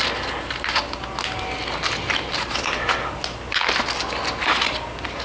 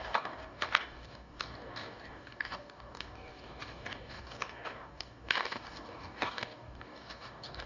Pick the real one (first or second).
first